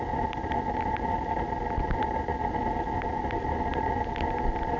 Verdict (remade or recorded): recorded